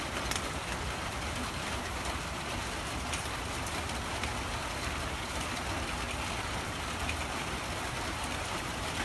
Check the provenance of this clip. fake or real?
real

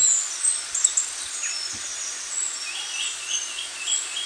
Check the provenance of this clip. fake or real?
real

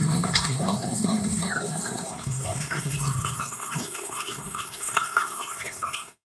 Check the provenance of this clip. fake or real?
fake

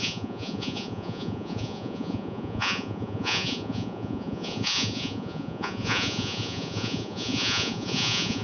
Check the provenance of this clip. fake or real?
fake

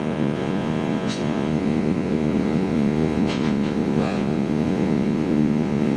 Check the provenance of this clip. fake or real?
fake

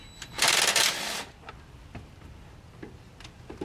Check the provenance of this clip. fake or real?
real